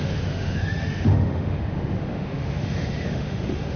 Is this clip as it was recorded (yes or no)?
no